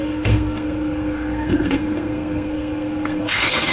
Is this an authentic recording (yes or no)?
no